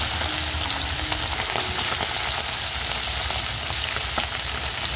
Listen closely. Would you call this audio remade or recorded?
recorded